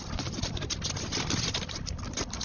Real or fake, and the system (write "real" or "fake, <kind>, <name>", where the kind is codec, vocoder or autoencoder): real